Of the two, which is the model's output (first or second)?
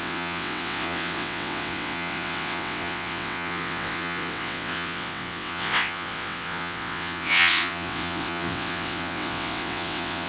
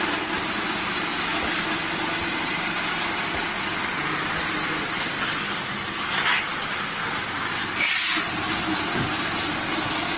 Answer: first